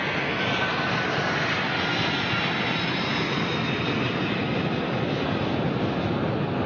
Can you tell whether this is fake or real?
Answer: real